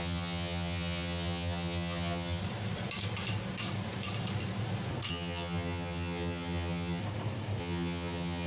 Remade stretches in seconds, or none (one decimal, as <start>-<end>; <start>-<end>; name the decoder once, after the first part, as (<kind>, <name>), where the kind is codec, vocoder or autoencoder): 0.0-2.4 (vocoder, HiFi-GAN); 5.1-7.0; 7.6-8.5